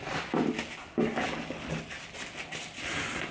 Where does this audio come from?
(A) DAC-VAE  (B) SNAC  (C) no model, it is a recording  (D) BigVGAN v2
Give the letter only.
C